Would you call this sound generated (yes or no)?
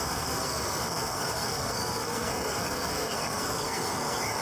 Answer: yes